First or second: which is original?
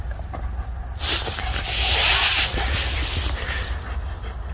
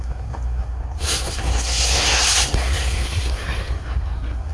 first